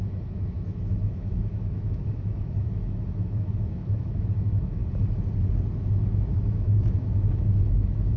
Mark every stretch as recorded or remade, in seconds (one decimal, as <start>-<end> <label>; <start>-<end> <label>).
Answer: 0.0-4.8 remade; 4.8-5.8 recorded; 5.8-8.2 remade